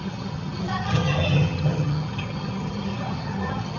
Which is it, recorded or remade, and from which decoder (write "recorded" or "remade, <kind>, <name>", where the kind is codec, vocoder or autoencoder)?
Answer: remade, vocoder, HiFi-GAN